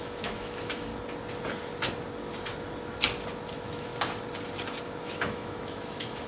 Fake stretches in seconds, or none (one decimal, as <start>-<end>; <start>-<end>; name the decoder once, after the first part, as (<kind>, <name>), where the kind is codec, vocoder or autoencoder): 0.0-0.9 (autoencoder, DAC-VAE); 3.5-3.9; 5.0-6.3